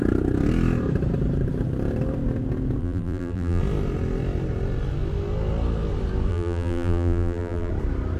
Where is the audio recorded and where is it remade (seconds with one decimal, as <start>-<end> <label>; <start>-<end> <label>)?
0.0-2.8 recorded; 2.8-3.6 remade; 3.6-6.3 recorded; 6.3-7.7 remade; 7.7-8.2 recorded